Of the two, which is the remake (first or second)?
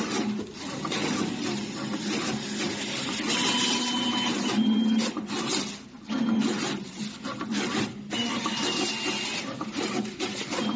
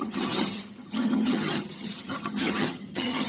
second